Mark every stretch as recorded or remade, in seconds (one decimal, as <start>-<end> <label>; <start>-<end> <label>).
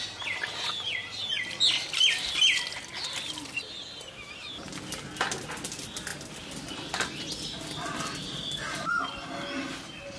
0.0-10.2 recorded